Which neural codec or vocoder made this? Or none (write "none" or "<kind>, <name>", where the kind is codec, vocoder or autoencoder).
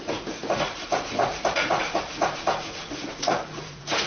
vocoder, Vocos